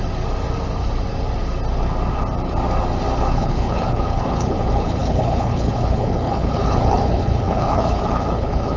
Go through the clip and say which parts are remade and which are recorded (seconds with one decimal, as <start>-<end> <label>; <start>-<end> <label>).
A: 0.0-3.3 recorded; 3.3-8.8 remade

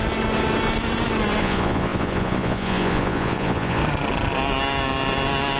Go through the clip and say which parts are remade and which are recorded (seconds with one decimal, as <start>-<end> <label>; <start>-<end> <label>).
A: 0.0-1.4 recorded; 1.4-3.8 remade; 3.8-5.6 recorded

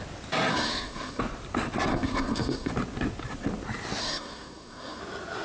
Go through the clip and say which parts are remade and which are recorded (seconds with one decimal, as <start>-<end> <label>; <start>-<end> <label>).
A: 0.0-0.5 recorded; 0.5-1.2 remade; 1.2-1.9 recorded; 1.9-2.7 remade; 2.7-4.0 recorded; 4.0-5.0 remade; 5.0-5.4 recorded

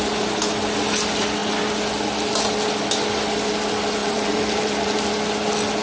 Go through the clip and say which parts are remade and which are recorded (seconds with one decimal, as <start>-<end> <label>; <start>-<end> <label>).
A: 0.0-4.0 recorded; 4.0-5.1 remade; 5.1-5.8 recorded

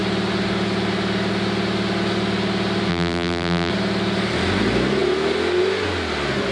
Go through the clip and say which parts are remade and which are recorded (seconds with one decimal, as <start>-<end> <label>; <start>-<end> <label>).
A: 0.0-2.9 recorded; 2.9-3.7 remade; 3.7-6.5 recorded

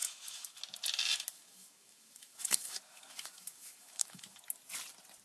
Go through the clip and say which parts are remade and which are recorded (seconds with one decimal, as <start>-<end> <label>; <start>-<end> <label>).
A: 0.0-0.6 remade; 0.6-1.3 recorded; 1.3-4.4 remade; 4.4-5.2 recorded

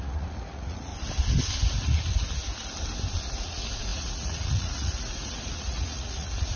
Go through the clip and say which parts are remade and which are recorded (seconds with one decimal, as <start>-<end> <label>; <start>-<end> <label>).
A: 0.0-0.9 remade; 0.9-3.4 recorded; 3.4-6.6 remade

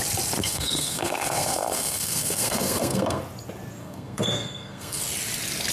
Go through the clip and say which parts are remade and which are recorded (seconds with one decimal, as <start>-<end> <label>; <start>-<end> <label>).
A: 0.0-0.4 recorded; 0.4-3.2 remade; 3.2-3.8 recorded; 3.8-5.0 remade; 5.0-5.7 recorded